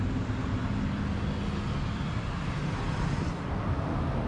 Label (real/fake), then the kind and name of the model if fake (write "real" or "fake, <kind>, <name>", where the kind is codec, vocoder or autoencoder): real